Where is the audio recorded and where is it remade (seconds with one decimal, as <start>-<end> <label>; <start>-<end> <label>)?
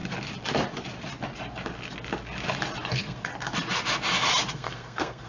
0.0-2.9 recorded; 2.9-3.3 remade; 3.3-4.5 recorded; 4.5-5.3 remade